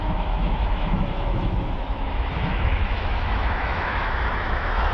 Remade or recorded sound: remade